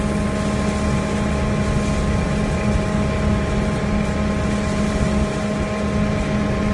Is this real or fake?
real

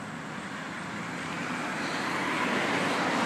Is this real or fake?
real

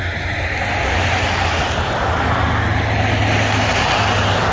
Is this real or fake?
real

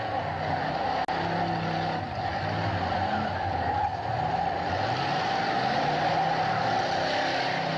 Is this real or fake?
real